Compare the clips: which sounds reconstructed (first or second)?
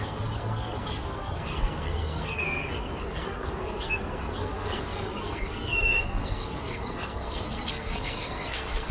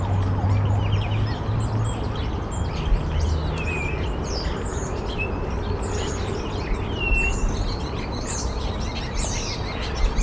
first